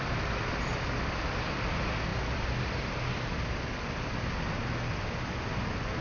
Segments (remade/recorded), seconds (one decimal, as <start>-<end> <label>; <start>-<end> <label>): 0.0-6.0 recorded